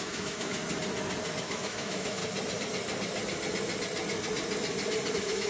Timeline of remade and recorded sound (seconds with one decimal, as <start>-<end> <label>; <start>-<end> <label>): 0.0-0.6 remade; 0.6-1.4 recorded; 1.4-2.2 remade; 2.2-5.1 recorded; 5.1-5.5 remade